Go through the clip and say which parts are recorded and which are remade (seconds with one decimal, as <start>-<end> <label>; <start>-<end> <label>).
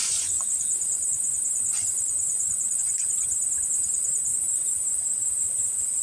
0.0-2.8 remade; 2.8-6.0 recorded